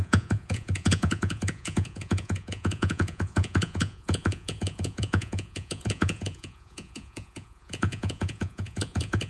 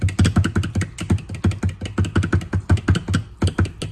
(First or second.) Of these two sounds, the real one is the second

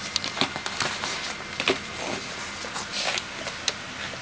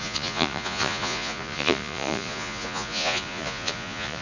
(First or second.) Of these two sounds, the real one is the first